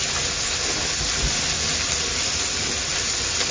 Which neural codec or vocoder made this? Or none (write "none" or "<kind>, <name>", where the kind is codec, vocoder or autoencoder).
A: none